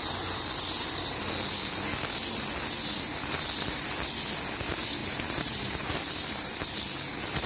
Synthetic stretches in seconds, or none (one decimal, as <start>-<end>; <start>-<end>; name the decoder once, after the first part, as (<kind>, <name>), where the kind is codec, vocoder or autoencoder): 5.0-5.9 (vocoder, BigVGAN v2)